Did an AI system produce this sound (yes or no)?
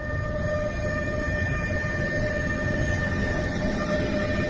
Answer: yes